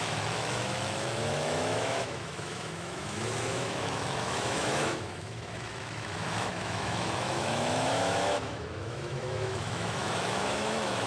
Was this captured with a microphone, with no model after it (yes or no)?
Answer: no